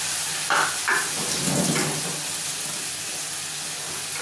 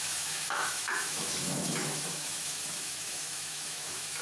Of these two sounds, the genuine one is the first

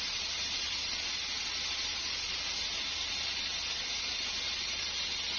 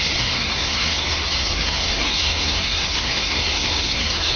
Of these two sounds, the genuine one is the first